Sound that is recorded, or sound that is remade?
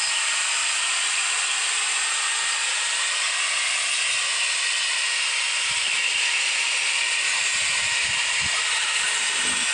remade